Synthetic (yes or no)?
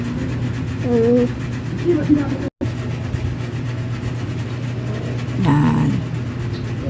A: no